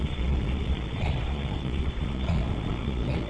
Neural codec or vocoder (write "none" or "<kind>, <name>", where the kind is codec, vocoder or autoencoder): vocoder, Vocos